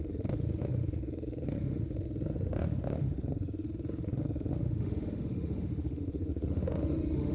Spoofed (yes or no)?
yes